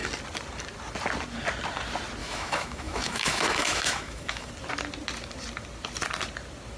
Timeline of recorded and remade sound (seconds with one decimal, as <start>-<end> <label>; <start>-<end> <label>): 0.0-2.2 recorded; 2.2-4.5 remade; 4.5-6.8 recorded